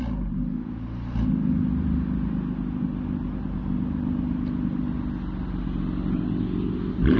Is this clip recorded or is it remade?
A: recorded